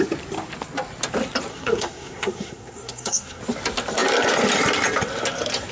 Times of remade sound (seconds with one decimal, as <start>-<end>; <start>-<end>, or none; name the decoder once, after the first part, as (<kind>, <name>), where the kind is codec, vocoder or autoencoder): 1.5-3.4 (codec, SNAC)